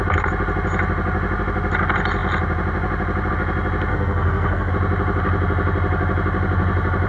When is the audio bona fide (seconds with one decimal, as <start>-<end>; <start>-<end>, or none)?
0.0-3.9; 4.7-7.1